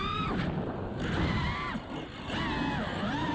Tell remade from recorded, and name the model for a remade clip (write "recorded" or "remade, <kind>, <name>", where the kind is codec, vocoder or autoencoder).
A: recorded